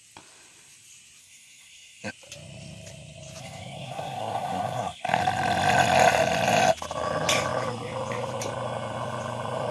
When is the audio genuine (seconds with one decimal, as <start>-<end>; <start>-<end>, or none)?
0.0-1.2; 2.1-3.4; 5.2-9.7